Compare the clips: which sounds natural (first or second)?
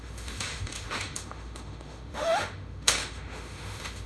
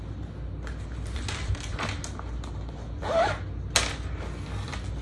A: second